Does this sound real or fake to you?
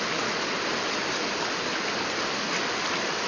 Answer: real